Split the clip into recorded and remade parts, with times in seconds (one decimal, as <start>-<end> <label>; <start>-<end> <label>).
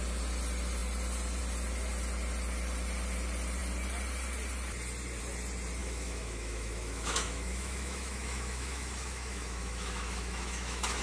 0.0-5.8 recorded; 5.8-11.0 remade